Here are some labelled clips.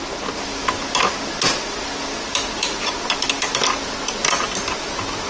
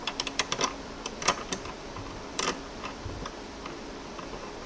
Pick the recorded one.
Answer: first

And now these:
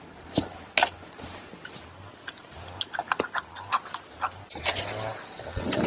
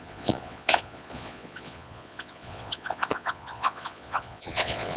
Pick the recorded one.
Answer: first